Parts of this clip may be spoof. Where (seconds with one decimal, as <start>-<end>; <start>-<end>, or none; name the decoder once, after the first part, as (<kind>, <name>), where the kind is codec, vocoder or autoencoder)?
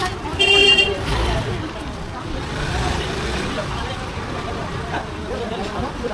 0.0-6.1 (vocoder, BigVGAN v2)